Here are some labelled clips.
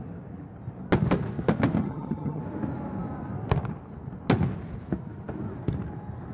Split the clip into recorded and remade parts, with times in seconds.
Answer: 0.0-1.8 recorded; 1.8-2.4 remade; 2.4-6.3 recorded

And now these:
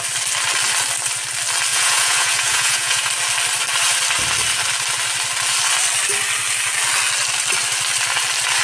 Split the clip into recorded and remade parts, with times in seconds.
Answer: 0.0-1.7 recorded; 1.7-3.1 remade; 3.1-8.6 recorded

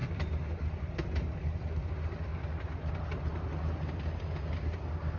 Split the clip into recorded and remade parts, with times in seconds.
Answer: 0.0-2.3 remade; 2.3-2.9 recorded; 2.9-3.3 remade; 3.3-5.2 recorded

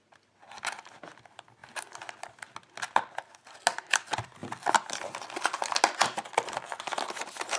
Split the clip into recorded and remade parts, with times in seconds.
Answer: 0.0-7.6 recorded